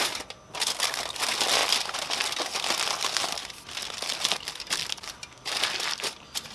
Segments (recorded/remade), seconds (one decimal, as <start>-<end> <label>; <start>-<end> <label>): 0.0-6.5 recorded